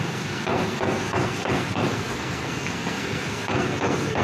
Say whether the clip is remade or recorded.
remade